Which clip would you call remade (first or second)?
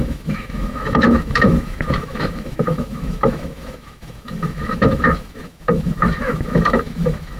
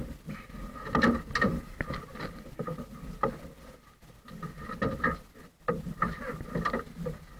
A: first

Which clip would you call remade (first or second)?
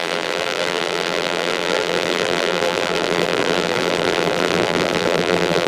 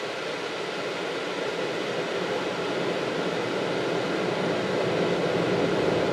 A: first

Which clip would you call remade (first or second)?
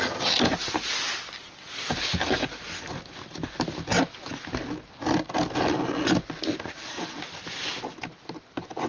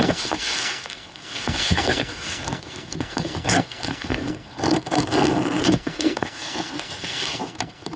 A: second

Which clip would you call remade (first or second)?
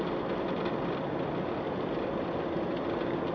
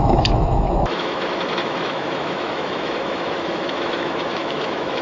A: second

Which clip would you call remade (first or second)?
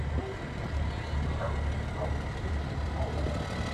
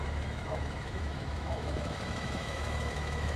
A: second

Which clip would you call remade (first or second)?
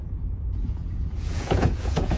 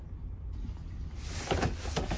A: first